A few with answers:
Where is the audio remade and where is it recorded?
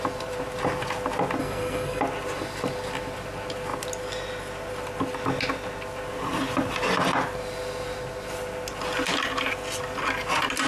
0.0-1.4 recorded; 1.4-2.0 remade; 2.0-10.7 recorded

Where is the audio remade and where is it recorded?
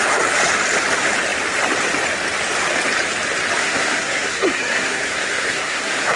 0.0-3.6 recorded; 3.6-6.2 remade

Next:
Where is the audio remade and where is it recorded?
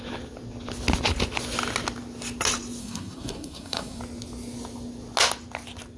0.0-2.8 recorded; 2.8-4.0 remade; 4.0-6.0 recorded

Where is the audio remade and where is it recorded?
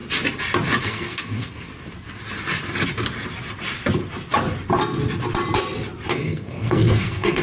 0.0-0.8 recorded; 0.8-1.7 remade; 1.7-6.1 recorded; 6.1-7.4 remade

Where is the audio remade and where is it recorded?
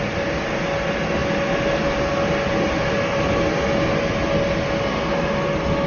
0.0-5.9 recorded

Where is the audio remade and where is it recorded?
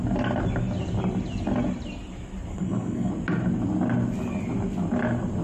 0.0-2.5 recorded; 2.5-3.1 remade; 3.1-5.4 recorded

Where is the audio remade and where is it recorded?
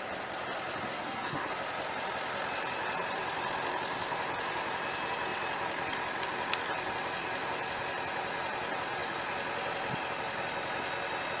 0.0-0.9 recorded; 0.9-1.5 remade; 1.5-11.4 recorded